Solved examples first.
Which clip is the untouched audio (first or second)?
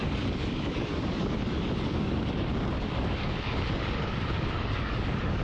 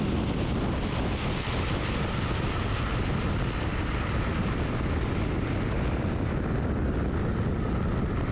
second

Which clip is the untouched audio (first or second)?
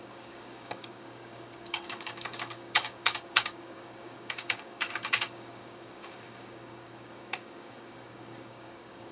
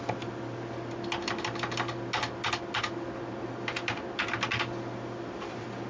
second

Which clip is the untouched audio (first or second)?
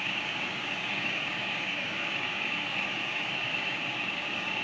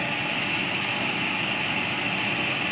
second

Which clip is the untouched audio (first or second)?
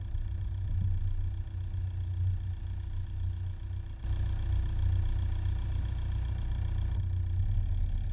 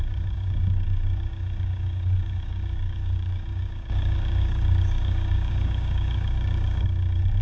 first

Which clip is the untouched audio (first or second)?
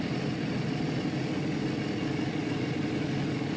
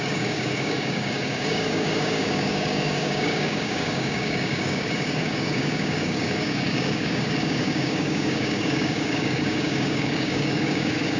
first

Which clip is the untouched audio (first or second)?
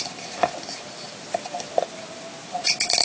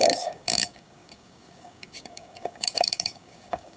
first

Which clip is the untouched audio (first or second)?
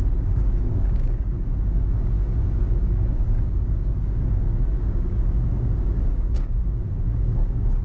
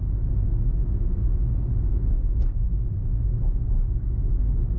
second